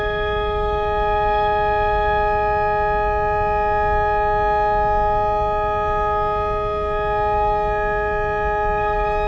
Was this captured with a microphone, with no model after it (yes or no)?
yes